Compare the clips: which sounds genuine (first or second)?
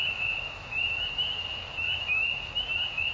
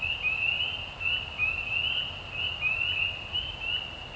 second